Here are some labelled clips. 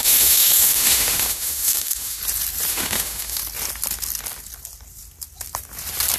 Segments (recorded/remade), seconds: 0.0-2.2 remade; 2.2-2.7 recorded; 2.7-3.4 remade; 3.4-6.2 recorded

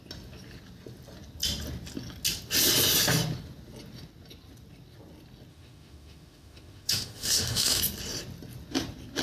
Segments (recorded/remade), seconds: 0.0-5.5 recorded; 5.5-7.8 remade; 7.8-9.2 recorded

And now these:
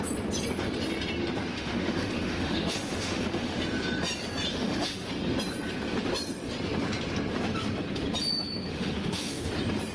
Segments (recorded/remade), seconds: 0.0-1.5 recorded; 1.5-3.6 remade; 3.6-4.5 recorded; 4.5-5.1 remade; 5.1-8.7 recorded; 8.7-9.5 remade; 9.5-9.9 recorded

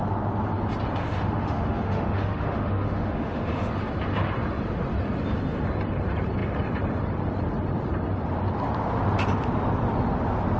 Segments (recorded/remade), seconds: 0.0-1.0 recorded; 1.0-3.7 remade; 3.7-10.6 recorded

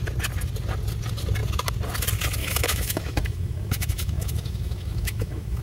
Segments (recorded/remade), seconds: 0.0-2.4 recorded; 2.4-5.6 remade

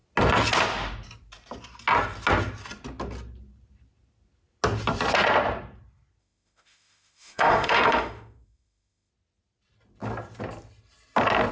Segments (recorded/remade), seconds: 0.0-6.2 recorded; 6.2-9.1 remade; 9.1-11.5 recorded

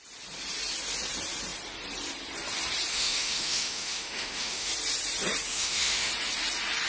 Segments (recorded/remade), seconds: 0.0-2.9 recorded; 2.9-4.7 remade; 4.7-5.5 recorded; 5.5-6.1 remade; 6.1-6.9 recorded

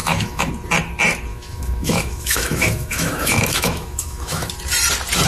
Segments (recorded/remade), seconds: 0.0-0.5 remade; 0.5-1.3 recorded; 1.3-4.5 remade; 4.5-5.3 recorded